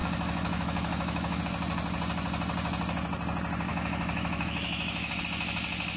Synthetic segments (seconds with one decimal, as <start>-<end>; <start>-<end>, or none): 0.0-1.4; 3.7-5.1